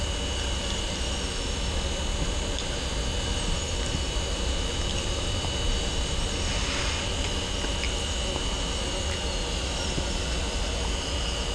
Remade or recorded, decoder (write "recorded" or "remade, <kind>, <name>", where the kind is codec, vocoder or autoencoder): recorded